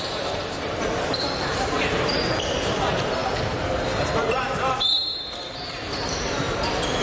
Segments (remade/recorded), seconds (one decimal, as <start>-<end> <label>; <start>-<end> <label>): 0.0-3.2 remade; 3.2-3.9 recorded; 3.9-7.0 remade